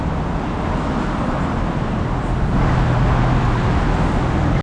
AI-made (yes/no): no